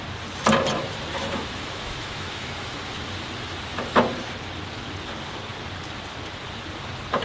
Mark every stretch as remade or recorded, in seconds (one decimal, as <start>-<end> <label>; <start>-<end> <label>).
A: 0.0-1.1 recorded; 1.1-2.8 remade; 2.8-7.2 recorded